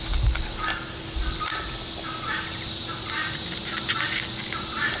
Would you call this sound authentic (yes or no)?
yes